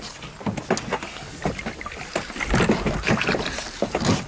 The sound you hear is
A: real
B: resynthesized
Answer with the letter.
A